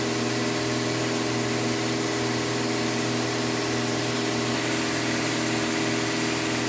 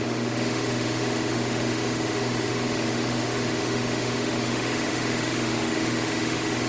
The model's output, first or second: second